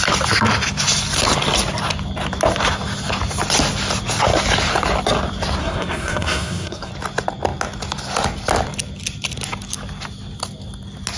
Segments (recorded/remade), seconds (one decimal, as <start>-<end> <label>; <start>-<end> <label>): 0.0-5.6 recorded; 5.6-6.9 remade; 6.9-11.2 recorded